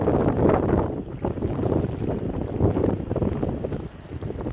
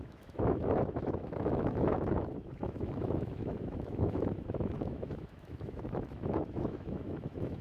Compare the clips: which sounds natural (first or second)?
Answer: first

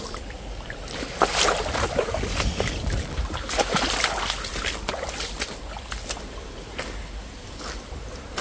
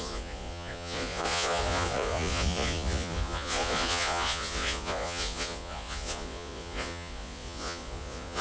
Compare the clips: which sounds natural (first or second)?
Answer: first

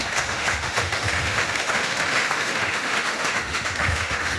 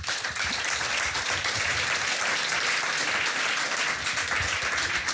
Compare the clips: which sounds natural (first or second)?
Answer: second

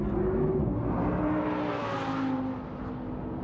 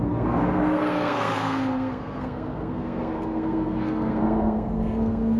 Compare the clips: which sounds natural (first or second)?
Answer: first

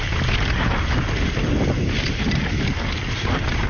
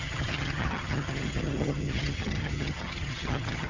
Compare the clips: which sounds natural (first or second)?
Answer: first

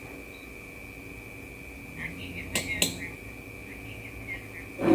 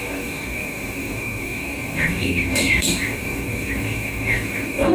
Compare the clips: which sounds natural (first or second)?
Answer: first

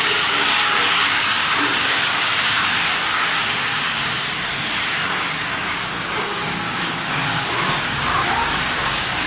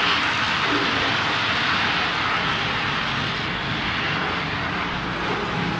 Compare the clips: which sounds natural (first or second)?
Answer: second